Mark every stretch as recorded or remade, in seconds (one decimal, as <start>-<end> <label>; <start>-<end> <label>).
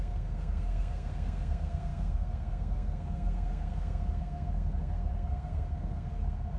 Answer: 0.0-6.6 remade